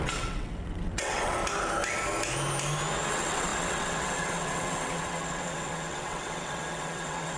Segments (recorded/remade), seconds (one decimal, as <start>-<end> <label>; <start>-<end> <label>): 0.0-1.4 remade; 1.4-3.1 recorded; 3.1-7.4 remade